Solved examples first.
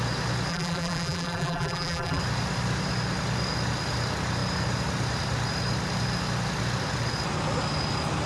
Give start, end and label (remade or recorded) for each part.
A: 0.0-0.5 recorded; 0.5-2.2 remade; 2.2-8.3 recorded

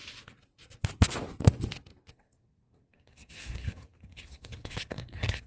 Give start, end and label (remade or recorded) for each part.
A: 0.0-2.1 recorded; 2.1-5.5 remade

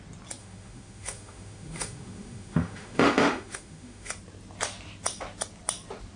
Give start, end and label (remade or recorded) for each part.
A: 0.0-0.4 recorded; 0.4-4.1 remade; 4.1-6.2 recorded

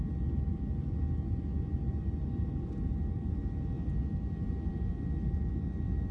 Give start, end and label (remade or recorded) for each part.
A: 0.0-6.1 recorded